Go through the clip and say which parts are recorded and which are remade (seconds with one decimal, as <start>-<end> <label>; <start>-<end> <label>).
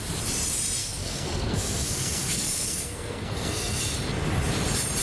0.0-0.8 recorded; 0.8-3.8 remade; 3.8-5.0 recorded